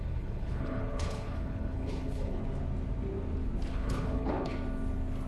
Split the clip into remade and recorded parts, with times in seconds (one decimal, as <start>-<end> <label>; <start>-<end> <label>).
0.0-2.4 remade; 2.4-3.7 recorded; 3.7-4.5 remade; 4.5-5.3 recorded